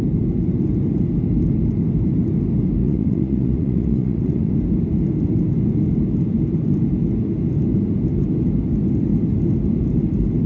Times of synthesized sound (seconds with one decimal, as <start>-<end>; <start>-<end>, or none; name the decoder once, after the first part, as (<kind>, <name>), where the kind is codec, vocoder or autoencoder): 2.8-4.5 (vocoder, Vocos)